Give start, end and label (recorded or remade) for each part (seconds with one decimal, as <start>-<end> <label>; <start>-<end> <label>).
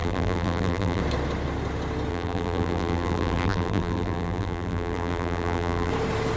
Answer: 0.0-1.0 remade; 1.0-2.1 recorded; 2.1-5.9 remade; 5.9-6.4 recorded